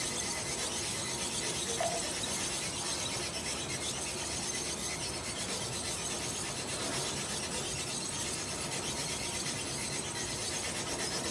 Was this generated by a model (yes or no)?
no